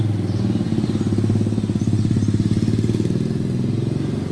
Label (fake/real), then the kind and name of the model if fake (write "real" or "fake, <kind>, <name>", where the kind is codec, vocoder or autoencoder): real